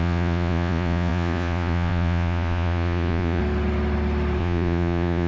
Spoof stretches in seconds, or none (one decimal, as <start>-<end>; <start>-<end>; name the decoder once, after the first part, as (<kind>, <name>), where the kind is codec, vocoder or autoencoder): 0.0-3.4 (vocoder, Vocos); 4.4-5.3